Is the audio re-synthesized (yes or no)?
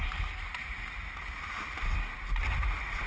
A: no